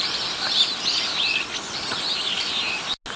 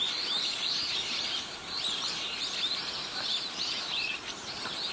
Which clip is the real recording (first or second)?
first